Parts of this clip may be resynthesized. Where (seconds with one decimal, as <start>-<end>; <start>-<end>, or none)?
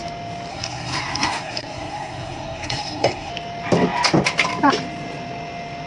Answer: 0.5-3.3